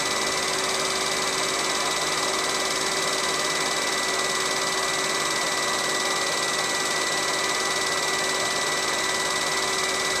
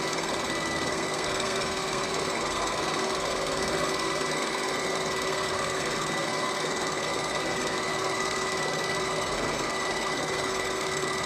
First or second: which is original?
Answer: first